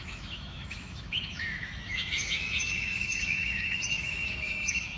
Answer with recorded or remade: remade